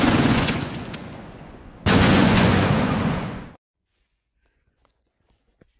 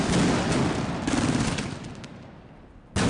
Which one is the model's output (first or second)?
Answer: first